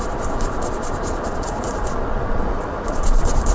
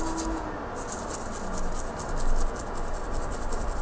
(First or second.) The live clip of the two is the second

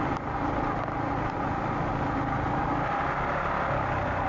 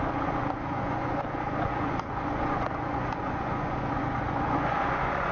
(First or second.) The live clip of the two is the first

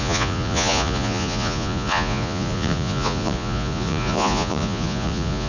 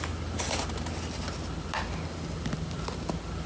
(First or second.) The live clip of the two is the second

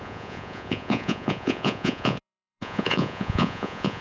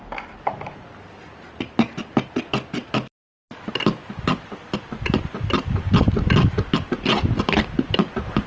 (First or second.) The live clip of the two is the second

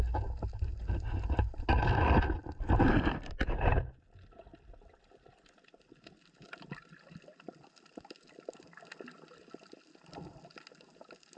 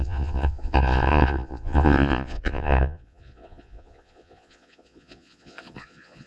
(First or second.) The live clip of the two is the first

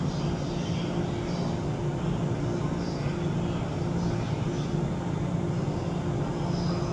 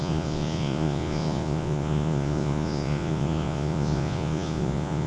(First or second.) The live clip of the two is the first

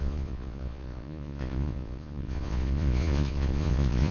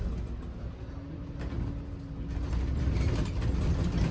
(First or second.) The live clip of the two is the second